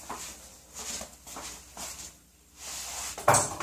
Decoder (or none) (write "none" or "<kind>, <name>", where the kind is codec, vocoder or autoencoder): none